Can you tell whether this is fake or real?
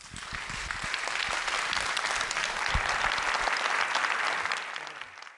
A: real